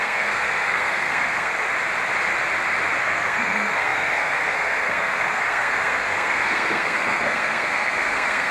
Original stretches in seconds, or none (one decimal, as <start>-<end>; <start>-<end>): 1.5-3.0